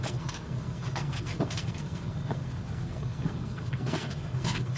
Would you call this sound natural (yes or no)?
no